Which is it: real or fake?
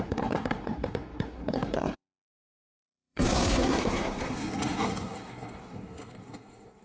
fake